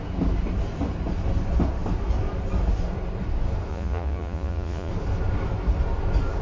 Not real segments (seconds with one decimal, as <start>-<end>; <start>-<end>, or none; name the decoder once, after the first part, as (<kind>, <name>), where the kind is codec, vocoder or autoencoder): 3.7-4.9 (vocoder, Vocos)